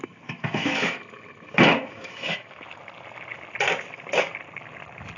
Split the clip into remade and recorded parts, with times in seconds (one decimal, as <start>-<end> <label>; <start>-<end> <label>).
0.0-0.4 recorded; 0.4-1.0 remade; 1.0-1.8 recorded; 1.8-2.7 remade; 2.7-5.2 recorded